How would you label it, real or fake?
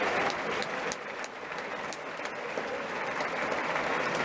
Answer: real